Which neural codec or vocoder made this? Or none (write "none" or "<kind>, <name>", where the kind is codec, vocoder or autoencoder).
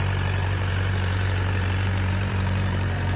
vocoder, BigVGAN v2